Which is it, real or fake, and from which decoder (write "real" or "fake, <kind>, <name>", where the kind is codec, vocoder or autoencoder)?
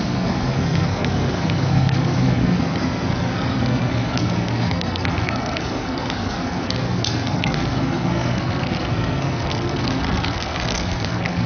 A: fake, codec, SNAC